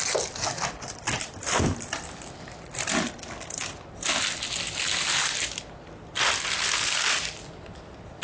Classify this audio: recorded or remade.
recorded